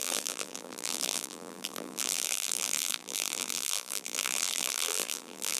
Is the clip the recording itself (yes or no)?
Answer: no